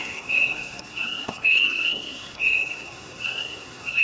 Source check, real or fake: fake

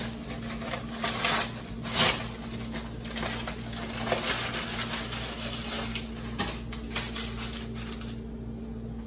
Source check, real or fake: real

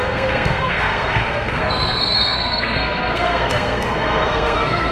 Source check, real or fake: fake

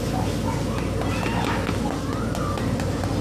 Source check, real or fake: real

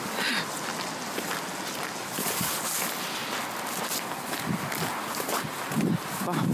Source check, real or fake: real